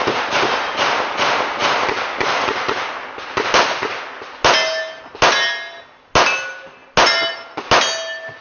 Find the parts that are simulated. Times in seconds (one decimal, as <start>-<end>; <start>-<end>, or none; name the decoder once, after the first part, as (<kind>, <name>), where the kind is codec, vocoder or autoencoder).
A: none